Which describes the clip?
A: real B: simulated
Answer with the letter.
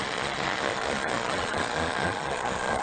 B